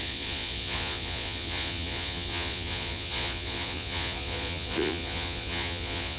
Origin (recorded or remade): remade